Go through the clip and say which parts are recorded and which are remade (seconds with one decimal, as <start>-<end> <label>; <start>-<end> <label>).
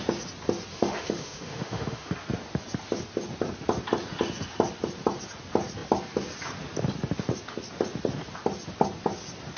0.0-0.7 recorded; 0.7-2.1 remade; 2.1-9.6 recorded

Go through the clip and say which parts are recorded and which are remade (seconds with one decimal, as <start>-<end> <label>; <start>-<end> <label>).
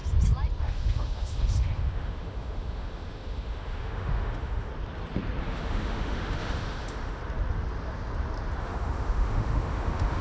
0.0-0.6 recorded; 0.6-4.7 remade; 4.7-5.4 recorded; 5.4-7.2 remade; 7.2-8.6 recorded; 8.6-10.2 remade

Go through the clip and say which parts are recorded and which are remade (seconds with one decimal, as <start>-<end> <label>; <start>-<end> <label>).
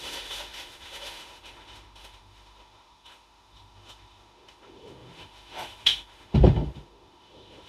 0.0-7.7 remade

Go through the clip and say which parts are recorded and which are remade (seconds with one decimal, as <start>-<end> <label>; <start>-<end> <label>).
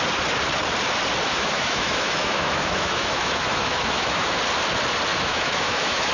0.0-1.3 recorded; 1.3-4.3 remade; 4.3-5.1 recorded; 5.1-6.1 remade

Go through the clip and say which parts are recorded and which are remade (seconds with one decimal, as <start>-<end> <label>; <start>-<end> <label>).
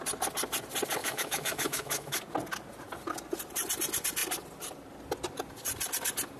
0.0-1.0 recorded; 1.0-2.2 remade; 2.2-6.4 recorded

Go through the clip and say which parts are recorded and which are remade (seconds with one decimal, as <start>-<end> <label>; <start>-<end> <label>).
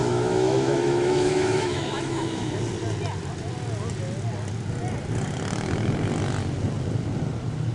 0.0-2.5 remade; 2.5-7.7 recorded